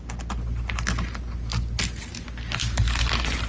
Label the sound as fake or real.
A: real